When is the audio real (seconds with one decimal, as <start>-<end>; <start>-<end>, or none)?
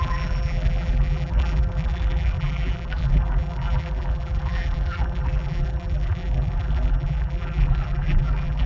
none